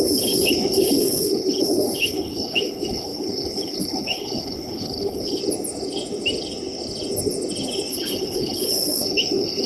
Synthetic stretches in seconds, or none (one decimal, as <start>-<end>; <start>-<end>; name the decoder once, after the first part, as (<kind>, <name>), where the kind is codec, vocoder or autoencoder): 0.0-5.4 (codec, HILCodec); 7.9-9.7

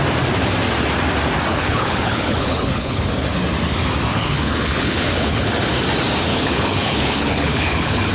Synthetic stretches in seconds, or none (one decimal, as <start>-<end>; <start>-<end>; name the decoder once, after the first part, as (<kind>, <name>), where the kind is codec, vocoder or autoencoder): 1.5-3.0 (codec, HILCodec); 4.1-5.5; 6.3-8.1